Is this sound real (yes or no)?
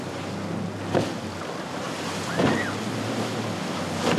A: yes